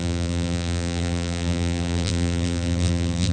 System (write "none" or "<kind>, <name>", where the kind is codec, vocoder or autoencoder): vocoder, BigVGAN v2